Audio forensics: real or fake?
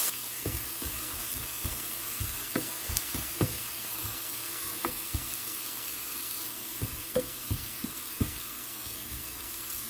fake